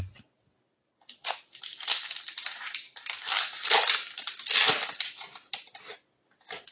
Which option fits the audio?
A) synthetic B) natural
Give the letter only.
B